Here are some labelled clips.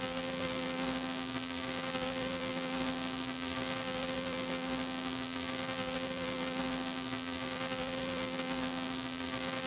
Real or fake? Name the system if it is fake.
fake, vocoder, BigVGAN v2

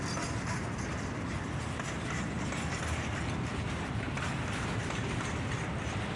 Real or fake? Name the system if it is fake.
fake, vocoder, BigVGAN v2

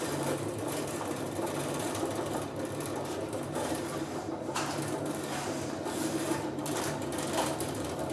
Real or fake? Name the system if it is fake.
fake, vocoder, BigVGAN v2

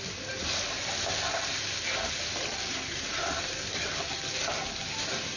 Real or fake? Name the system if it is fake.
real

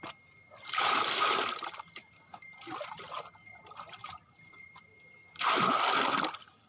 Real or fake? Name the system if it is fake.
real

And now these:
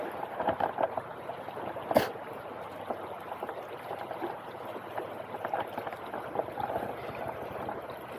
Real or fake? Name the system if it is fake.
real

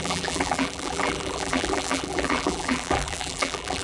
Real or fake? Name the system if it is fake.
fake, vocoder, BigVGAN v2